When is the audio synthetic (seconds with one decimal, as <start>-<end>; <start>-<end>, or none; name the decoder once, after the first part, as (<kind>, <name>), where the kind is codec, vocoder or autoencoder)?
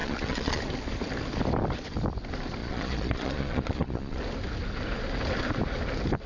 0.0-0.6 (vocoder, Vocos); 2.6-4.2